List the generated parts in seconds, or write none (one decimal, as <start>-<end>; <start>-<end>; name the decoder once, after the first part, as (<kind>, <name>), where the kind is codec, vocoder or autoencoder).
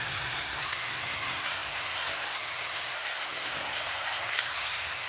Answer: 0.0-5.1 (codec, SNAC)